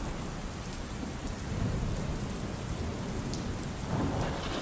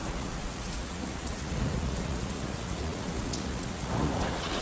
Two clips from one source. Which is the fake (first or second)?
second